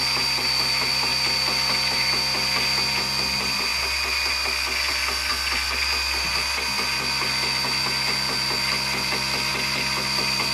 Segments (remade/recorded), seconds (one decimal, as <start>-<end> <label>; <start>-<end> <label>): 0.0-3.7 recorded; 3.7-4.3 remade; 4.3-10.5 recorded